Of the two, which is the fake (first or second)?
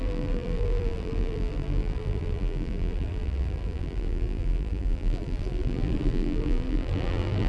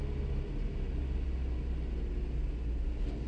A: first